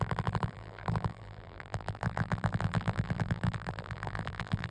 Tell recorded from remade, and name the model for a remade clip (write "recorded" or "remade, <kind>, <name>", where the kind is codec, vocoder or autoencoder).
remade, vocoder, BigVGAN v2